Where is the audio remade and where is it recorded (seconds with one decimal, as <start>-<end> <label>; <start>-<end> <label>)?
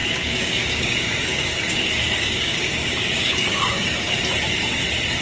0.0-4.2 remade; 4.2-5.2 recorded